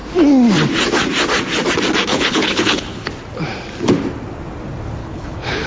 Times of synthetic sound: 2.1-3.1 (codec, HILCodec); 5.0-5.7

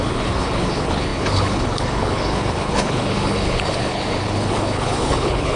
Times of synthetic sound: 0.0-5.6 (codec, HILCodec)

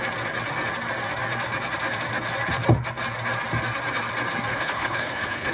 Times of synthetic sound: 4.5-5.5 (codec, HILCodec)

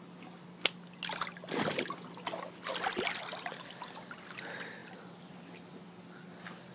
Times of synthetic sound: none

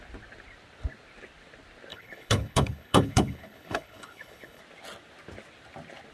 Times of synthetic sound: 1.9-4.6 (codec, HILCodec)

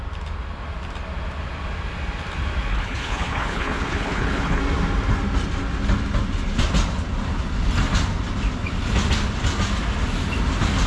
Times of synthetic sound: 2.7-4.6 (codec, HILCodec)

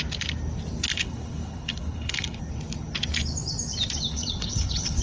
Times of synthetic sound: 0.9-2.4 (codec, HILCodec); 4.1-5.0